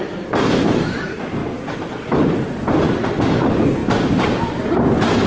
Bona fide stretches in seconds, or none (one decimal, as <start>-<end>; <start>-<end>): 1.4-2.0; 3.8-5.3